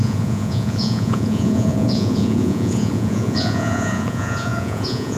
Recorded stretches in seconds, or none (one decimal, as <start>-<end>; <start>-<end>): none